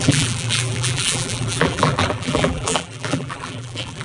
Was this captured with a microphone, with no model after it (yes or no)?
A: no